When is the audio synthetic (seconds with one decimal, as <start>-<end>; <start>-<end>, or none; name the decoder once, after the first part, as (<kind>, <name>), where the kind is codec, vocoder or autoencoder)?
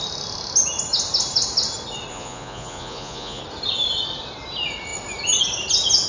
2.1-3.4 (vocoder, Vocos)